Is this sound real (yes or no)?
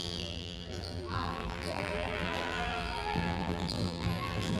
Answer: no